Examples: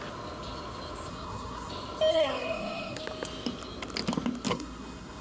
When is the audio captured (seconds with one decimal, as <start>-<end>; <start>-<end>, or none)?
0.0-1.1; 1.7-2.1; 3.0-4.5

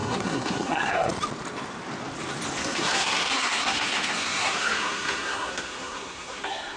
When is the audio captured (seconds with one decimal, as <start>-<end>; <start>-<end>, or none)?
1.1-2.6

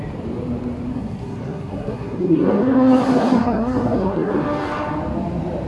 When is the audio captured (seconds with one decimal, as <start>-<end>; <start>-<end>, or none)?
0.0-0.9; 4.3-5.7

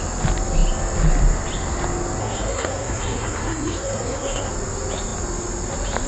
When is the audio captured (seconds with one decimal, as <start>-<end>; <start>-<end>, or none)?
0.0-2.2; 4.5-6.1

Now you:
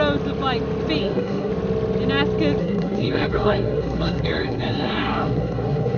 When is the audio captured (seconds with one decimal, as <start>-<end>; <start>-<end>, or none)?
0.0-1.0; 1.5-2.6